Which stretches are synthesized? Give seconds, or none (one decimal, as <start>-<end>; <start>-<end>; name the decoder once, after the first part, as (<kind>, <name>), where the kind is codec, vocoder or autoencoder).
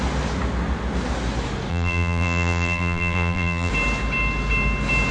1.7-3.7 (vocoder, BigVGAN v2)